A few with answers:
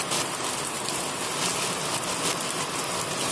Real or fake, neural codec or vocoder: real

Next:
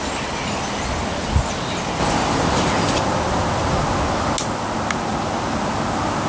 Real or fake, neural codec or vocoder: real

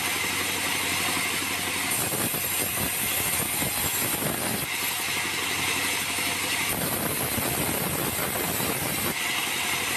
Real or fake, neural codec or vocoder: real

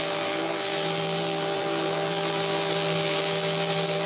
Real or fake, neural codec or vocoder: fake, vocoder, BigVGAN v2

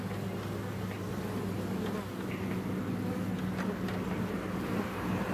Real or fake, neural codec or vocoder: fake, vocoder, BigVGAN v2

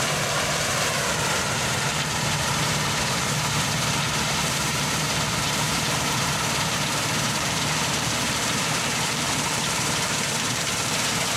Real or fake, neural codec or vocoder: fake, vocoder, BigVGAN v2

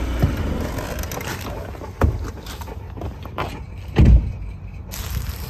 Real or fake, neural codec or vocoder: real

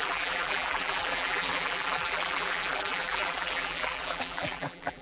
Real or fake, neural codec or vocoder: fake, vocoder, BigVGAN v2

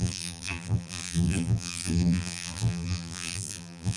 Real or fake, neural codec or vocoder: fake, vocoder, BigVGAN v2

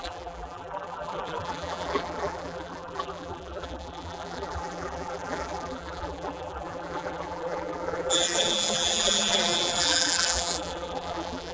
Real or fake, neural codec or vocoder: fake, vocoder, BigVGAN v2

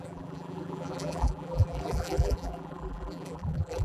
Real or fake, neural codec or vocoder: fake, vocoder, BigVGAN v2